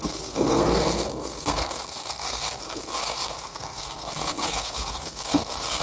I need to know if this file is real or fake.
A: fake